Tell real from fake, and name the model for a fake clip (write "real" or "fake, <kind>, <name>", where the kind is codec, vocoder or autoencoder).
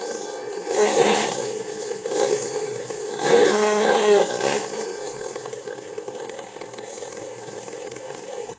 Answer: fake, codec, SNAC